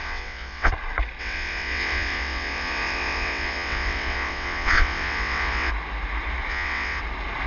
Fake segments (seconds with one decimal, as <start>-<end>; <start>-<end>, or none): 0.0-0.7; 1.2-5.7; 6.5-7.0